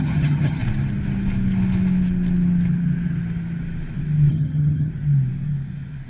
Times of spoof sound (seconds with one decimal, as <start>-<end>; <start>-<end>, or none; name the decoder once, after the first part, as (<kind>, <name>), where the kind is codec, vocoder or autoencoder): 0.0-0.6 (vocoder, HiFi-GAN); 4.3-4.9